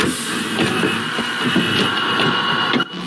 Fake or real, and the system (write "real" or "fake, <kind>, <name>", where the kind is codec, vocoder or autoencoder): real